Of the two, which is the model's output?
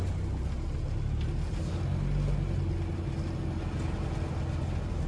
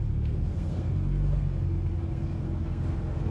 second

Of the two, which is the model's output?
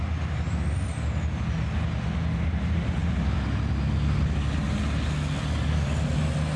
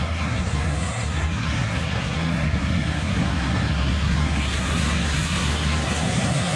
second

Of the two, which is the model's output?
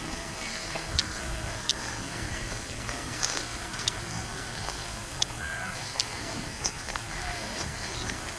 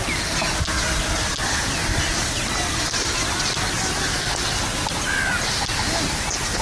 first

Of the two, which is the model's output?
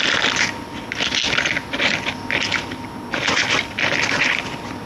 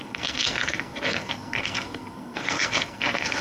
second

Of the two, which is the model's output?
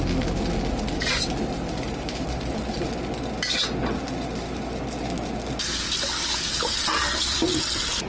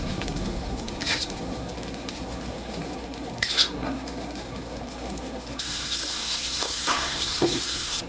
second